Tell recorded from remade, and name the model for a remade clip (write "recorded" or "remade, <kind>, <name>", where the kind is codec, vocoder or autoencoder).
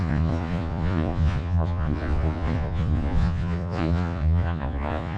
remade, vocoder, Vocos